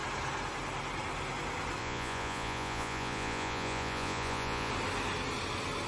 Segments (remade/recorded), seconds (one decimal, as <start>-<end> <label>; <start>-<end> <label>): 0.0-1.8 recorded; 1.8-4.7 remade; 4.7-5.9 recorded